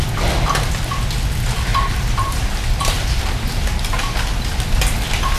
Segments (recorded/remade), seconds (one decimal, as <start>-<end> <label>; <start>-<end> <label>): 0.0-1.7 recorded; 1.7-2.6 remade; 2.6-5.4 recorded

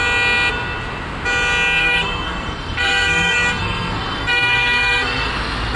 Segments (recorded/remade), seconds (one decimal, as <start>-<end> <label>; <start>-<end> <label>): 0.0-1.8 recorded; 1.8-5.3 remade; 5.3-5.8 recorded

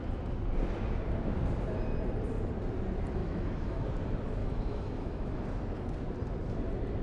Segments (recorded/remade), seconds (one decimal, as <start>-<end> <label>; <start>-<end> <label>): 0.0-3.2 recorded; 3.2-3.8 remade; 3.8-4.4 recorded; 4.4-5.3 remade; 5.3-7.0 recorded

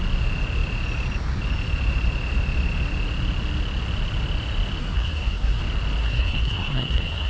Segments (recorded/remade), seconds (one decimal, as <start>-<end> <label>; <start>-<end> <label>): 0.0-4.8 recorded; 4.8-5.6 remade; 5.6-6.0 recorded; 6.0-7.3 remade